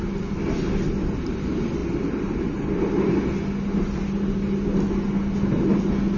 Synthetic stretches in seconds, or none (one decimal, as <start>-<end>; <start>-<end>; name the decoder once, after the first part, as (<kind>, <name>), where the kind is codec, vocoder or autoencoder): none